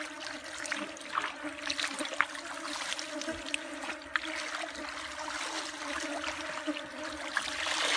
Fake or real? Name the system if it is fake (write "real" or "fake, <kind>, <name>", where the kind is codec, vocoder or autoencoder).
real